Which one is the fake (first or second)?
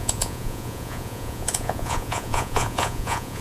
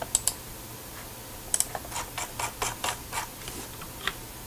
first